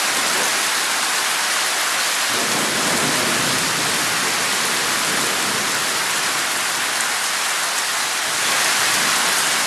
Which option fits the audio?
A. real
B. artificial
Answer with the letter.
A